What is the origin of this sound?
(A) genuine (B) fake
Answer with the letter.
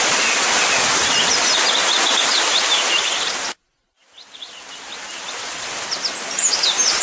A